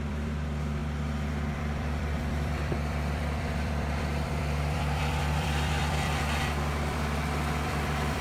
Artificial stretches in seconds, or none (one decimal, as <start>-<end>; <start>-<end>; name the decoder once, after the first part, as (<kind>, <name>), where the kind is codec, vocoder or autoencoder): 0.0-8.2 (vocoder, BigVGAN v2)